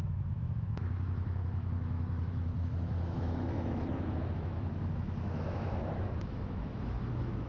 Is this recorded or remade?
remade